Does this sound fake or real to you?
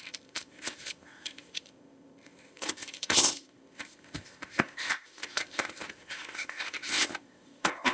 fake